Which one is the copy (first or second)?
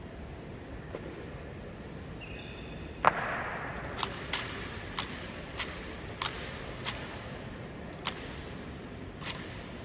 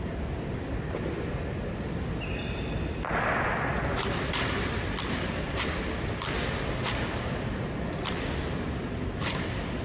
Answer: first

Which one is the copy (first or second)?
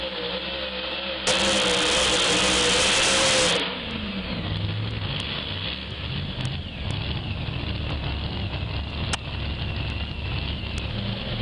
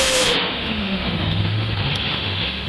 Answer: second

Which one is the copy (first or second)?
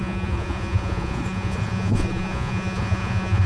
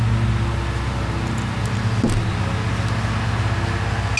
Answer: first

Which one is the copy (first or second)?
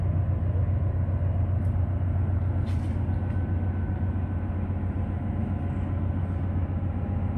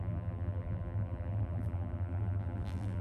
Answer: second